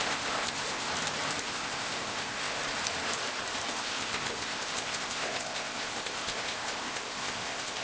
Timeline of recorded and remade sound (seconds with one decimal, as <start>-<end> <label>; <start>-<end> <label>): 0.0-0.9 remade; 0.9-1.4 recorded; 1.4-2.6 remade; 2.6-3.7 recorded; 3.7-7.8 remade